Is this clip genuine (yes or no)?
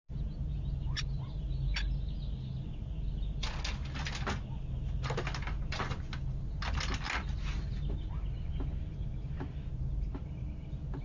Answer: yes